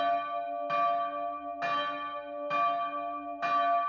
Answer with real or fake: real